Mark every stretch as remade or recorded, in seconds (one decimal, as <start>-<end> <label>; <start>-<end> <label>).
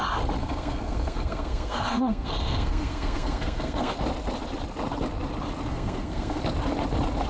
0.0-0.4 recorded; 0.4-3.9 remade; 3.9-5.7 recorded; 5.7-6.4 remade; 6.4-7.3 recorded